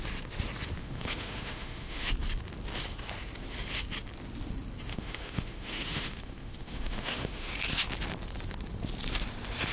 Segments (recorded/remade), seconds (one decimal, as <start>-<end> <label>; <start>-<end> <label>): 0.0-0.8 recorded; 0.8-2.1 remade; 2.1-4.9 recorded; 4.9-7.5 remade; 7.5-9.7 recorded